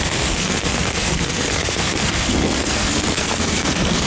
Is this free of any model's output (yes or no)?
no